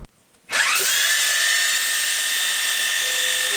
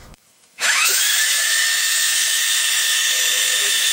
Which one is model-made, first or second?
second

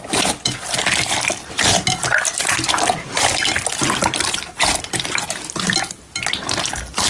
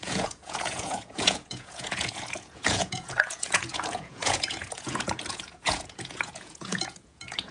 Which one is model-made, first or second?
second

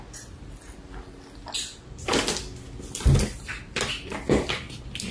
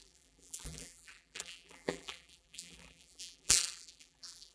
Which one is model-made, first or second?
second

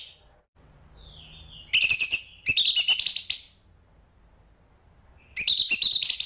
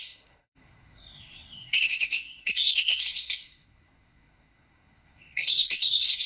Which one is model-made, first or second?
second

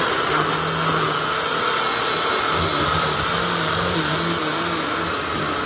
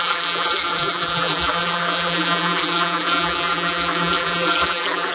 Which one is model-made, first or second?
second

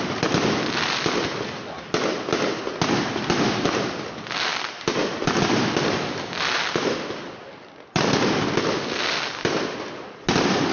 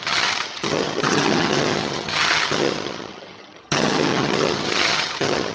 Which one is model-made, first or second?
second